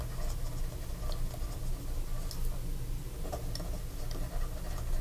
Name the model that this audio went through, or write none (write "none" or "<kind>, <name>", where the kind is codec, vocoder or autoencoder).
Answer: none